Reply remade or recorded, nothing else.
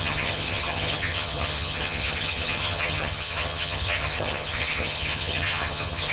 remade